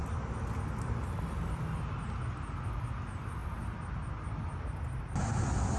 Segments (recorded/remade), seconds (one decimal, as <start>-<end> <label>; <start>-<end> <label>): 0.0-5.8 recorded